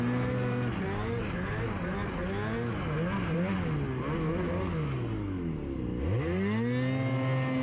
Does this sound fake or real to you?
real